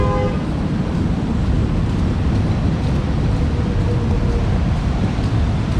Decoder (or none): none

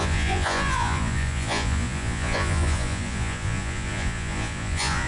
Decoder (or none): vocoder, Vocos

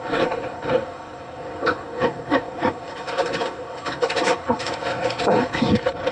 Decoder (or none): codec, SNAC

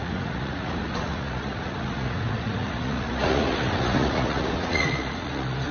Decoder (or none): vocoder, Vocos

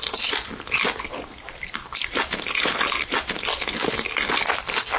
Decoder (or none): none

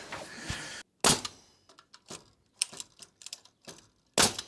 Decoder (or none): none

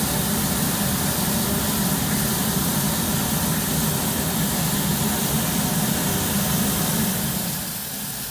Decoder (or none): none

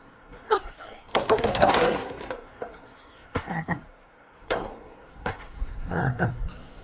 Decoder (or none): codec, SNAC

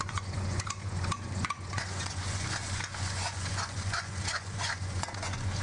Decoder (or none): vocoder, Vocos